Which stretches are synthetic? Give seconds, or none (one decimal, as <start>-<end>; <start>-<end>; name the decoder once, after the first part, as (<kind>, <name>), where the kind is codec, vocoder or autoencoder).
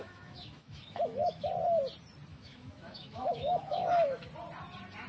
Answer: 0.0-1.5 (autoencoder, DAC-VAE); 2.3-4.3